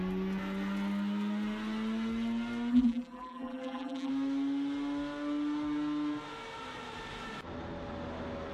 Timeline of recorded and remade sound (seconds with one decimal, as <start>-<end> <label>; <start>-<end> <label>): 0.0-2.7 recorded; 2.7-4.1 remade; 4.1-8.5 recorded